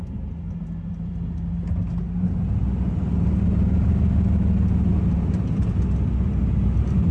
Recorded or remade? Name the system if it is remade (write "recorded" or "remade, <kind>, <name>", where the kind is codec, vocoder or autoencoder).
recorded